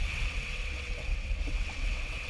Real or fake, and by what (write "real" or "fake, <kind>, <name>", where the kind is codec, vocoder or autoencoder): fake, vocoder, WaveNeXt